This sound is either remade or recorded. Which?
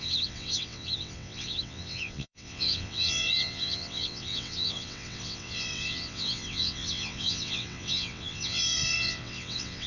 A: remade